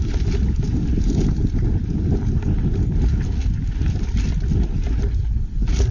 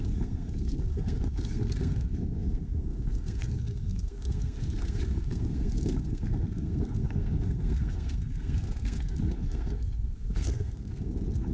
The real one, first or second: first